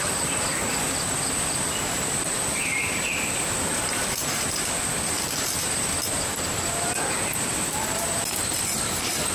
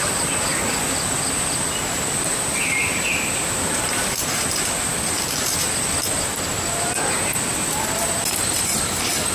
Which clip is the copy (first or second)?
first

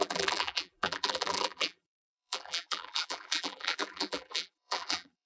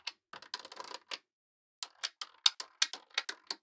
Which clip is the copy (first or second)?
first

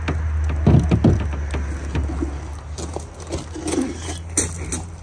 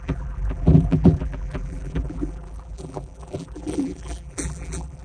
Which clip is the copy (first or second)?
second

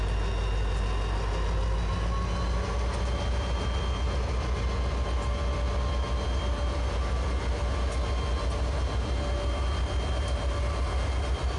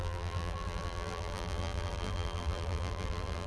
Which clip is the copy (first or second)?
second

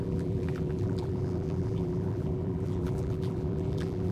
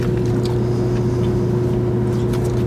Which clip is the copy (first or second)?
first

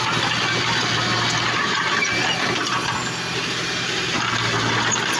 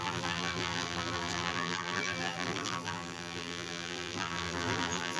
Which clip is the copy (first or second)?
second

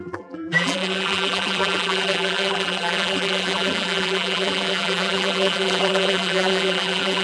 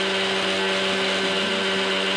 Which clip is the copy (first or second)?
first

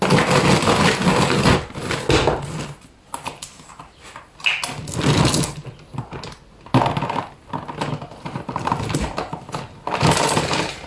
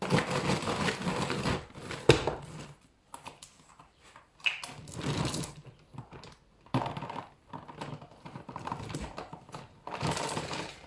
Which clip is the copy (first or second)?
second